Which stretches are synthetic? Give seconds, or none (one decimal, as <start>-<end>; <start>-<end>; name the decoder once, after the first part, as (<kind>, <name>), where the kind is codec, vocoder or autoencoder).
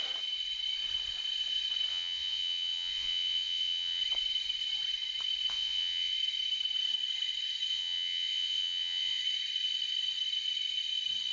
1.9-4.0 (vocoder, Vocos); 5.5-6.1; 7.7-9.2